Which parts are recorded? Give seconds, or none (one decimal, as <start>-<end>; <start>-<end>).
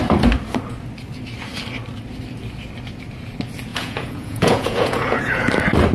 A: 0.0-3.7; 5.5-5.9